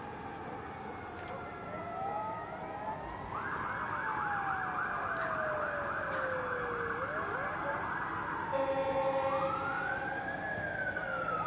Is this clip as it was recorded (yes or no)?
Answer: yes